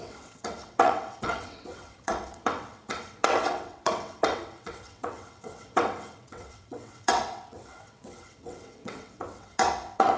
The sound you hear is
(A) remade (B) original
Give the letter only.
A